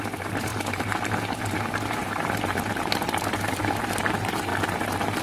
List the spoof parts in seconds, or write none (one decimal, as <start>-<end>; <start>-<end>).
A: 0.0-4.5